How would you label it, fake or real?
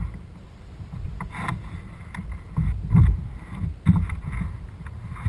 real